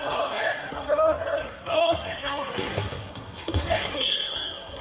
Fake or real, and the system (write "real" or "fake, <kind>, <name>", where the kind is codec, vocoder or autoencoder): fake, codec, SNAC